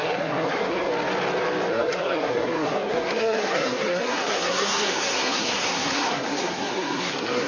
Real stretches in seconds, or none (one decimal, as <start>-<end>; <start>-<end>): 0.9-1.7